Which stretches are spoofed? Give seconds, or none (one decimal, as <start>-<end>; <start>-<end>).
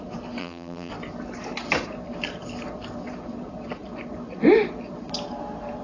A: 0.4-0.9